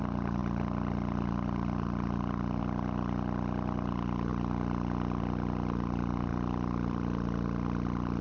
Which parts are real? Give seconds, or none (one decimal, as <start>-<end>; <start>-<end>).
0.0-0.4; 2.6-6.3